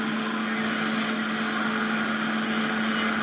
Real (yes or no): yes